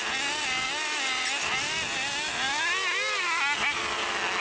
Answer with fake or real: real